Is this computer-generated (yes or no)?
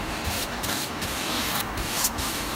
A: yes